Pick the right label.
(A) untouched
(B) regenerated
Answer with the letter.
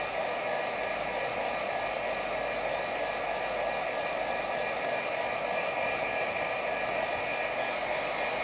A